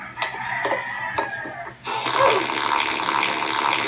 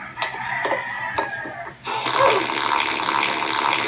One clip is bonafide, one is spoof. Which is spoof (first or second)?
second